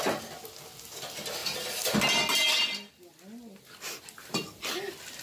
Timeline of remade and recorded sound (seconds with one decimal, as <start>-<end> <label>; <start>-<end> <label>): 0.0-5.2 recorded

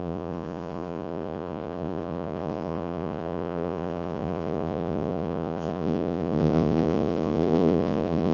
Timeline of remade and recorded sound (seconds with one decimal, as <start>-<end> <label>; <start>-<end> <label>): 0.0-8.3 remade

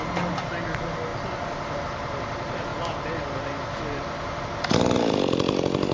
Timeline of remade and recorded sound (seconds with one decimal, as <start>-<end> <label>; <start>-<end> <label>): 0.0-5.9 recorded

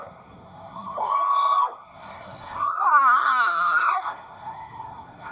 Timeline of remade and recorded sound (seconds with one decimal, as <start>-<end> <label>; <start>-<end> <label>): 0.0-5.3 remade